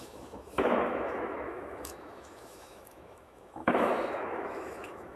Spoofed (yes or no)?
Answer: yes